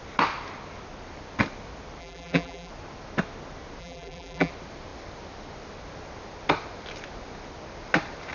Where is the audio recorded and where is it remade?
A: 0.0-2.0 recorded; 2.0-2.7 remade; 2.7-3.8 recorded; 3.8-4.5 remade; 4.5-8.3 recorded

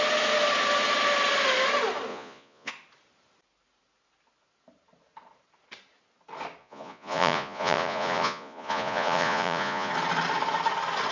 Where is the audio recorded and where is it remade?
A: 0.0-2.1 recorded; 2.1-2.7 remade; 2.7-6.6 recorded; 6.6-9.9 remade; 9.9-11.1 recorded